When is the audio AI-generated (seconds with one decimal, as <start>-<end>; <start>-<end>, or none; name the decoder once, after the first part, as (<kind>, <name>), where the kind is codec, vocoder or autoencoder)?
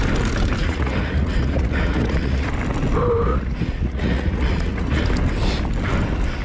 0.6-2.5 (vocoder, Vocos); 3.3-5.1